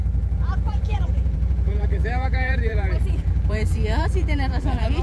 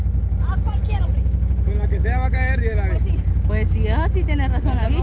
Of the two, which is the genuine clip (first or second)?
second